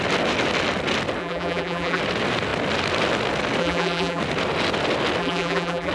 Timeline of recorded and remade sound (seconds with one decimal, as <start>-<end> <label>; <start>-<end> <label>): 0.0-1.2 recorded; 1.2-2.0 remade; 2.0-3.6 recorded; 3.6-4.2 remade; 4.2-5.2 recorded; 5.2-5.9 remade